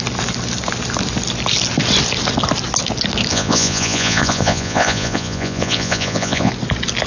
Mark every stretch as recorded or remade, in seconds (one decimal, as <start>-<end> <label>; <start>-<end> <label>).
0.0-3.3 recorded; 3.3-6.5 remade; 6.5-7.1 recorded